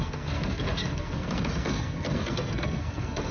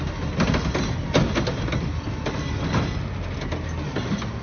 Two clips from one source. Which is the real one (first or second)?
second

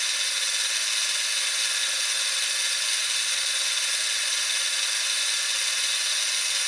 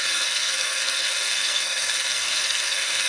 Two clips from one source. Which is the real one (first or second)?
first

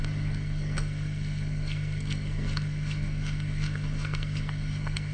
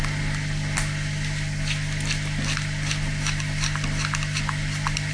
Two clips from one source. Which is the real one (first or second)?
second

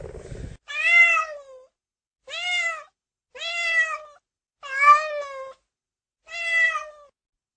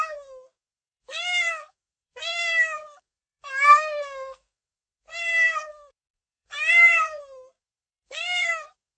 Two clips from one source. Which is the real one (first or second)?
first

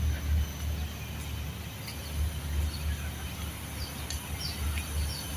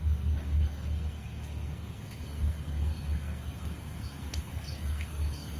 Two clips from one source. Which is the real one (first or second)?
first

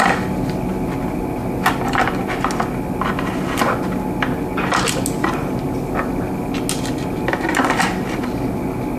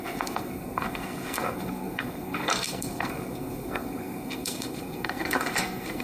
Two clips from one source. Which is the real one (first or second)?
first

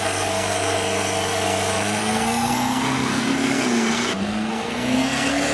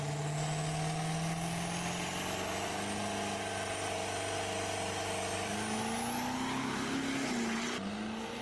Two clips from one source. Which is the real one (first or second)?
second